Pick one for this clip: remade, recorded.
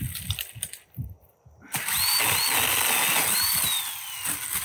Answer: recorded